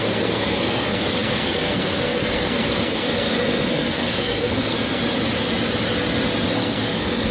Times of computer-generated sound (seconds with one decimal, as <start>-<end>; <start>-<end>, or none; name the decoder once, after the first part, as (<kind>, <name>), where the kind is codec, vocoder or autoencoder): 0.0-5.0 (codec, SNAC); 6.5-7.3